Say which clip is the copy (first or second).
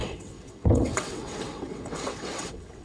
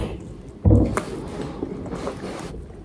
first